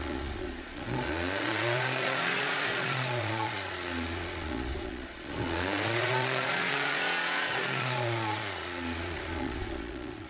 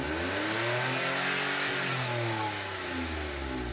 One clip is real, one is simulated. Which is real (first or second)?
second